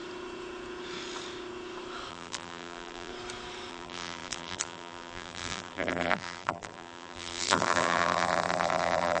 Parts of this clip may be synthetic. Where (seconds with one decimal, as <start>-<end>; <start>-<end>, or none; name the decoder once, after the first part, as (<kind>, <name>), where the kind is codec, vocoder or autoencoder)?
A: 2.1-3.1 (vocoder, BigVGAN v2); 3.7-9.2